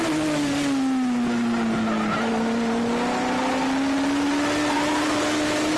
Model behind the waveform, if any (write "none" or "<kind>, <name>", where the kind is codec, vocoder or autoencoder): none